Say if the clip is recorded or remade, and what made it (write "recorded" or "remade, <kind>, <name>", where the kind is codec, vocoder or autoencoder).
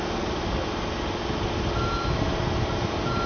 recorded